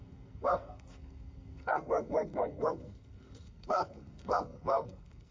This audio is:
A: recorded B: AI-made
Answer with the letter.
B